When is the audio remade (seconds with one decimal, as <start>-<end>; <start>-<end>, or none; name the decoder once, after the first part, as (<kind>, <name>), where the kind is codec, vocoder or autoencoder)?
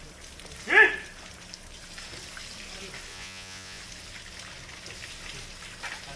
3.1-3.8 (vocoder, Vocos)